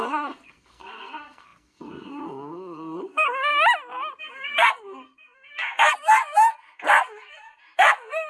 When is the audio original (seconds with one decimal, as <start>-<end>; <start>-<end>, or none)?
3.5-4.2